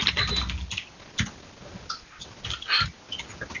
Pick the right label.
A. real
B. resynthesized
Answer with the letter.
A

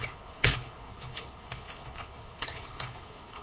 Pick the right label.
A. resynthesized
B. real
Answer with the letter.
A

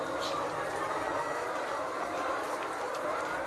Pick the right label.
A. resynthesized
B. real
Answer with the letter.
A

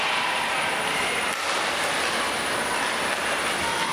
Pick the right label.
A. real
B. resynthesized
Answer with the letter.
A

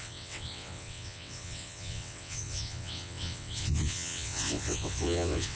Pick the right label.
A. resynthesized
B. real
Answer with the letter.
A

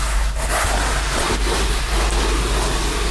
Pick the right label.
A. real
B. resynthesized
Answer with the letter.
A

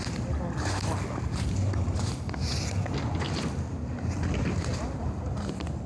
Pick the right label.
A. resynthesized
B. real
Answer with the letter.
B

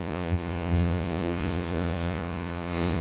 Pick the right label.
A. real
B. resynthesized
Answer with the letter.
B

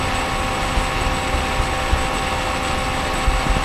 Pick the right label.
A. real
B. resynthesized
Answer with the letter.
A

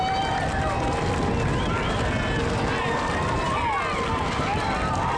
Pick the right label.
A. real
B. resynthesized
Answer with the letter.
A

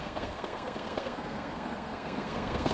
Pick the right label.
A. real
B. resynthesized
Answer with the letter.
B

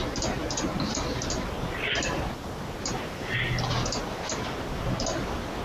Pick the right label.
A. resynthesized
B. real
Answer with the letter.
B